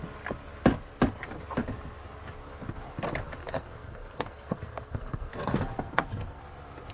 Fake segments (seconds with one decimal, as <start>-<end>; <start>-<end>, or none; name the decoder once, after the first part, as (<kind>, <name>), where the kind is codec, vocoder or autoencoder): 3.4-6.4 (codec, SNAC)